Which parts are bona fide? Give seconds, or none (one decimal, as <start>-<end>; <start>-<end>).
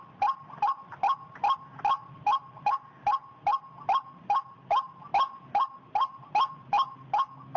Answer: 0.0-2.0; 2.6-7.6